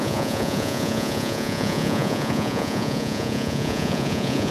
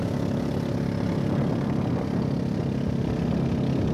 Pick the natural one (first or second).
second